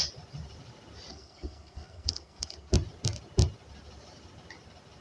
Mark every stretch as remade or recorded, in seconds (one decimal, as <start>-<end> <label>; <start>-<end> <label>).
0.0-1.1 recorded; 1.1-2.7 remade; 2.7-5.0 recorded